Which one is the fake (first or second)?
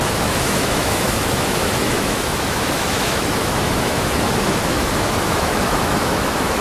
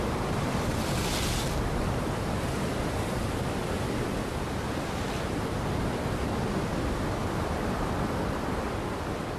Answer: first